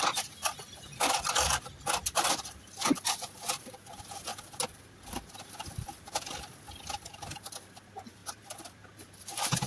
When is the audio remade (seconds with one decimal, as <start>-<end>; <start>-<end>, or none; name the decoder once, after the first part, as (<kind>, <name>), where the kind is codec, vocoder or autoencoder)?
0.0-9.7 (vocoder, BigVGAN v2)